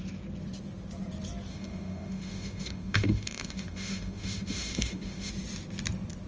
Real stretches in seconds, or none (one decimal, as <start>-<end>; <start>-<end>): 0.0-1.5; 5.3-6.3